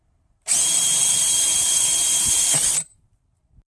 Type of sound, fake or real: fake